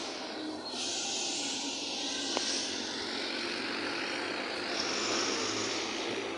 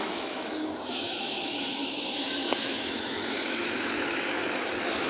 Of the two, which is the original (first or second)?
first